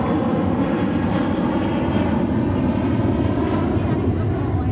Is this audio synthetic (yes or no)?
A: no